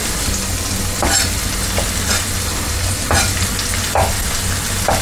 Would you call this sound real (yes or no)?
yes